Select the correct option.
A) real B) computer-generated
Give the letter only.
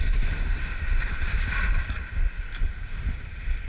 A